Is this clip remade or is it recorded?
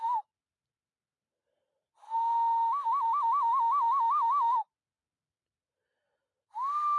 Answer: recorded